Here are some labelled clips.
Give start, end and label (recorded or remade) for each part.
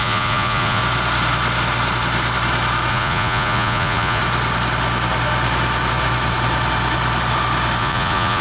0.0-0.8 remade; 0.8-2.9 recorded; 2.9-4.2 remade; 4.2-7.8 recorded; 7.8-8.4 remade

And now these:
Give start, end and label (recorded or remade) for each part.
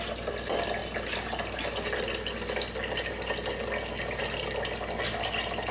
0.0-5.7 recorded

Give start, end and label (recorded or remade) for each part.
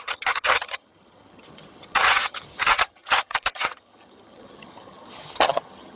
0.0-6.0 remade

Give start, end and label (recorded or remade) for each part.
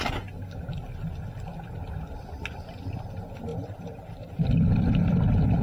0.0-3.5 recorded; 3.5-4.3 remade; 4.3-5.6 recorded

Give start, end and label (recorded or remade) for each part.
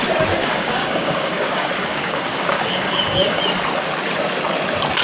0.0-0.4 recorded; 0.4-3.4 remade; 3.4-5.0 recorded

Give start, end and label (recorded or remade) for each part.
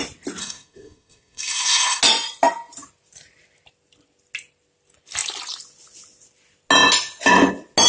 0.0-0.4 recorded; 0.4-2.0 remade; 2.0-7.9 recorded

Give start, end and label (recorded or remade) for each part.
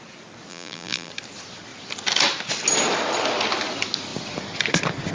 0.0-0.5 recorded; 0.5-1.1 remade; 1.1-5.1 recorded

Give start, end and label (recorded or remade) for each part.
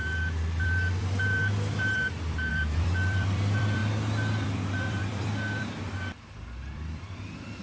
0.0-3.8 remade; 3.8-4.3 recorded; 4.3-7.6 remade